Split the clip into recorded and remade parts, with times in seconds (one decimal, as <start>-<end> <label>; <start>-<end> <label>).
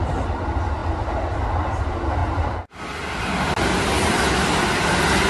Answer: 0.0-5.3 recorded